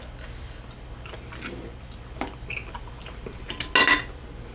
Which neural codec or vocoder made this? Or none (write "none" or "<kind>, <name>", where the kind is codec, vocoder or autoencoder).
none